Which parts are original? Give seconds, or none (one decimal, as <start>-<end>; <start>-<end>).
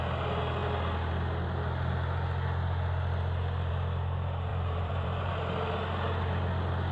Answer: 0.0-4.5; 5.3-6.9